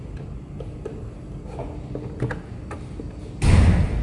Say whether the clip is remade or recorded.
recorded